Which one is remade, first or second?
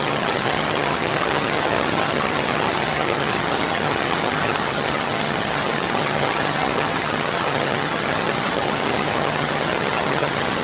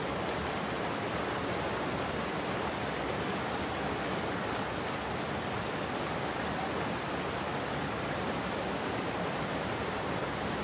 first